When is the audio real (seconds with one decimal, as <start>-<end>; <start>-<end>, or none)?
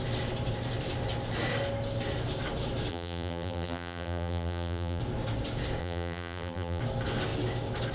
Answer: 0.0-2.9; 5.0-5.8; 6.8-7.9